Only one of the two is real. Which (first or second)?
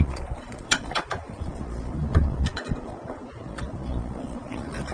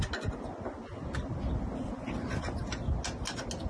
second